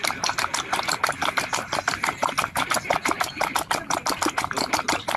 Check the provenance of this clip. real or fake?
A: real